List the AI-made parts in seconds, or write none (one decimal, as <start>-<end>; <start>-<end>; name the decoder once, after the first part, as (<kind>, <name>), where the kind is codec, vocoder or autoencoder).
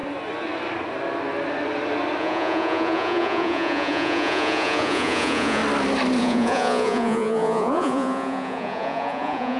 2.2-5.6 (vocoder, Vocos); 6.2-9.6